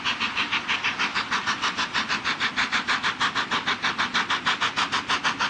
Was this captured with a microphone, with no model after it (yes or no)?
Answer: yes